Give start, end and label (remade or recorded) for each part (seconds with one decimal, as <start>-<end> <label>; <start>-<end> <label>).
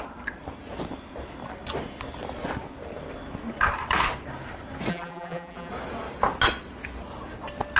0.0-4.9 recorded; 4.9-5.7 remade; 5.7-7.8 recorded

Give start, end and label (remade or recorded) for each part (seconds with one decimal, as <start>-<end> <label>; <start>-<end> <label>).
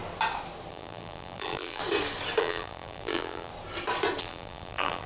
0.0-0.7 recorded; 0.7-1.8 remade; 1.8-2.4 recorded; 2.4-3.5 remade; 3.5-4.2 recorded; 4.2-5.1 remade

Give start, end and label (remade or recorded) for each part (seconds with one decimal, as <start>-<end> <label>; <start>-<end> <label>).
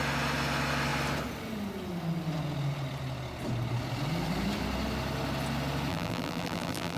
0.0-5.9 recorded; 5.9-7.0 remade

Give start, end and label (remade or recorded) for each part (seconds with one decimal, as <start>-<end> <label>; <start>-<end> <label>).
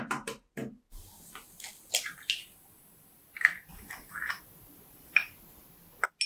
0.0-0.6 remade; 0.6-4.4 recorded; 4.4-5.6 remade; 5.6-6.3 recorded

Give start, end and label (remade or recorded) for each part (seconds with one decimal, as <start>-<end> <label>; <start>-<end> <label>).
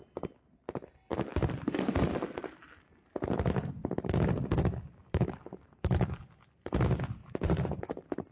0.0-5.0 recorded; 5.0-6.2 remade; 6.2-7.2 recorded; 7.2-7.8 remade; 7.8-8.3 recorded